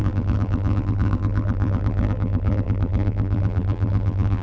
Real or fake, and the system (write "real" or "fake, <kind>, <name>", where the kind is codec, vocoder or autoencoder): fake, vocoder, BigVGAN v2